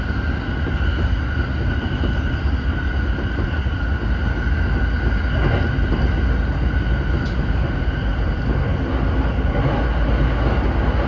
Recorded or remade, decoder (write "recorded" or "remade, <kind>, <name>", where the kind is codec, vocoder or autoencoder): recorded